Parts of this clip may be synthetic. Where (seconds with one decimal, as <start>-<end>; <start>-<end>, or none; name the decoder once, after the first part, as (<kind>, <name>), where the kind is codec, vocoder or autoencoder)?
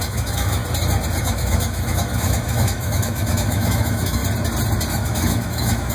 0.0-0.6 (autoencoder, DAC-VAE); 1.2-4.2; 4.9-5.9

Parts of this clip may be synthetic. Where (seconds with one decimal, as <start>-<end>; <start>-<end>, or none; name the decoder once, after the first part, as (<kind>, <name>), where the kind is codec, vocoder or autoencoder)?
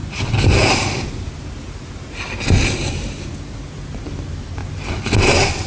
4.6-5.2 (vocoder, BigVGAN v2)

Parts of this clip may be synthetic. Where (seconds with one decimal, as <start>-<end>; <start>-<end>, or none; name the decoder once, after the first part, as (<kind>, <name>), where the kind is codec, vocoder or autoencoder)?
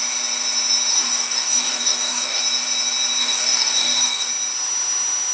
0.9-2.4 (codec, DAC); 3.2-4.3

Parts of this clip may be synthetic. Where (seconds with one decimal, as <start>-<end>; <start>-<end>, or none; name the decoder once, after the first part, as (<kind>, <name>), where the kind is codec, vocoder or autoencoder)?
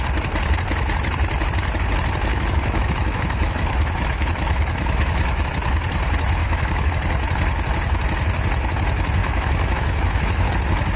2.3-5.5 (autoencoder, DAC-VAE); 6.4-6.9; 9.2-10.5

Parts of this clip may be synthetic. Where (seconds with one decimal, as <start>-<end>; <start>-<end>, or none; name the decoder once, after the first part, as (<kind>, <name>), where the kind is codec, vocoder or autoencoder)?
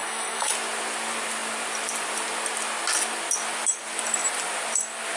0.0-0.5 (codec, SNAC)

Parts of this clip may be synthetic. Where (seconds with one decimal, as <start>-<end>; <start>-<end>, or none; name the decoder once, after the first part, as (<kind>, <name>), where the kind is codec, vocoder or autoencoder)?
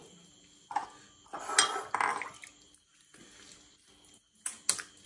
none